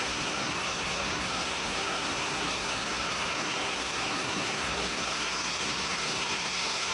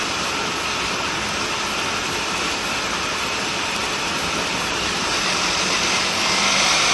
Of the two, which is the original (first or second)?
second